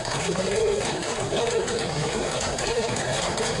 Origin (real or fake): fake